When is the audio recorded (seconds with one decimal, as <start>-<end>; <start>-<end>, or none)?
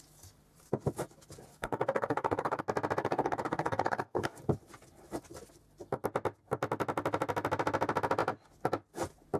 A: 0.0-1.5; 2.6-3.0; 4.4-9.4